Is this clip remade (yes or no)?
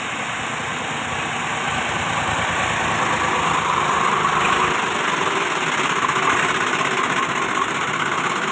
no